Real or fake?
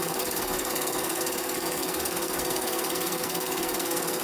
fake